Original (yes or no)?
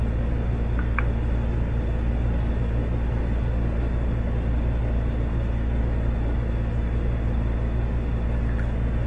yes